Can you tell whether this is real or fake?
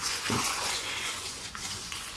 fake